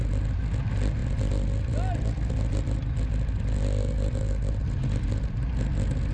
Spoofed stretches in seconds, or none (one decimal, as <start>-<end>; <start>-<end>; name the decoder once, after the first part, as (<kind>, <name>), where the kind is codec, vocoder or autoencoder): none